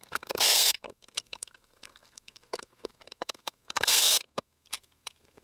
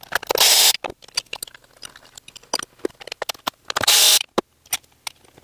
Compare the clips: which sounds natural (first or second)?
second